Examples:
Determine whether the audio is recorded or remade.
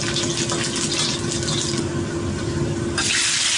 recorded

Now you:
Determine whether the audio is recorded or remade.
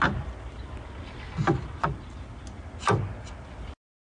recorded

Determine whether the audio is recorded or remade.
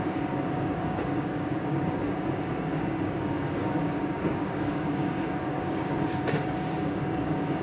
remade